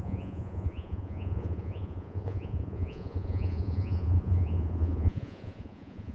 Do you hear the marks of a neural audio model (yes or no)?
yes